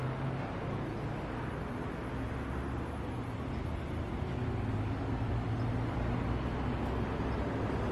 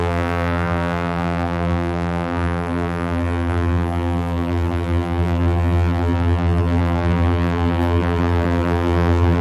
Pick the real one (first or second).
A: first